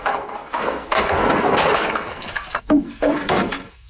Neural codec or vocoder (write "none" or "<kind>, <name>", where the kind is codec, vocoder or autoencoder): codec, SNAC